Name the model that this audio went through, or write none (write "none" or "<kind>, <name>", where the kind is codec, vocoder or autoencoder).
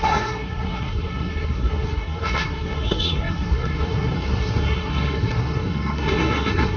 codec, SNAC